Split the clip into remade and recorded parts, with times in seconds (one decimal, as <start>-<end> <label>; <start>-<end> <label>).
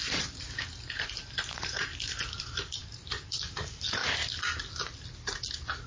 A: 0.0-1.9 remade; 1.9-2.4 recorded; 2.4-4.0 remade; 4.0-5.9 recorded